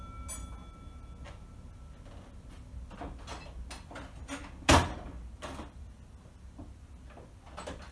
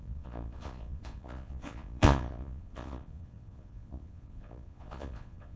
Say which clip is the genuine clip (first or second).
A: first